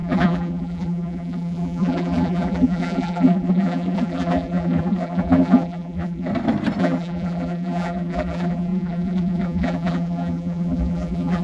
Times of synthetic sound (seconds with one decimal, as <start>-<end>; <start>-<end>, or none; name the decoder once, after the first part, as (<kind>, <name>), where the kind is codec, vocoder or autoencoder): 0.0-6.3 (vocoder, BigVGAN v2); 6.8-11.4